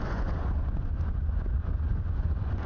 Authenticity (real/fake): fake